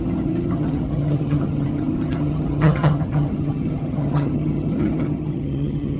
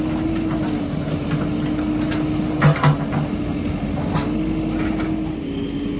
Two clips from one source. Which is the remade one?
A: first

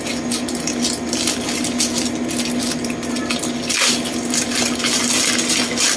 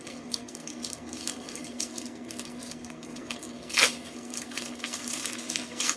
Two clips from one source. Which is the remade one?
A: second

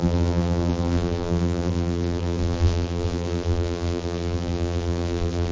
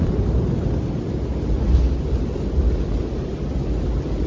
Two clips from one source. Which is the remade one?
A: first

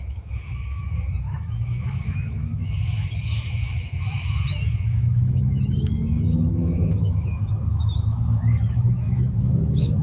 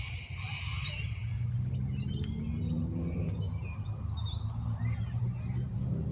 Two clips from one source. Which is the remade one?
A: first